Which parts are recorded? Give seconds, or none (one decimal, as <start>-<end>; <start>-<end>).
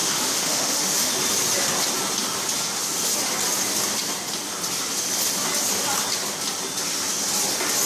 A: 1.1-7.9